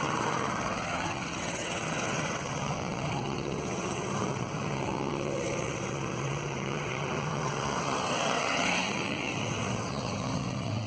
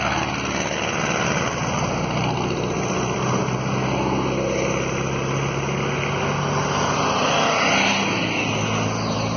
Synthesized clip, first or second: first